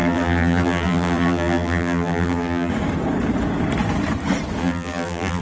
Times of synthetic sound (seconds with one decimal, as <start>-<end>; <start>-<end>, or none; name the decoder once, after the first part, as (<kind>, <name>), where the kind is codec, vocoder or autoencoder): 0.0-2.7 (vocoder, BigVGAN v2); 4.6-5.4